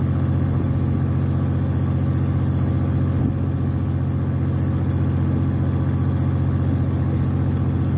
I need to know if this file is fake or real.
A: real